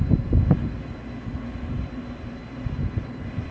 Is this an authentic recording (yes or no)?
yes